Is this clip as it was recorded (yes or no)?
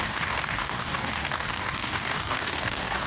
no